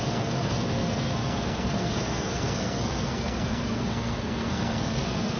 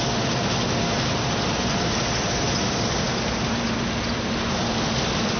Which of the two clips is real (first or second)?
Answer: second